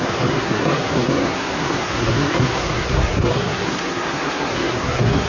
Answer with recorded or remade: remade